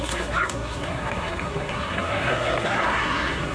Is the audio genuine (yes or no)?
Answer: no